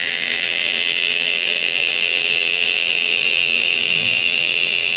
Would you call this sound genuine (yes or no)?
no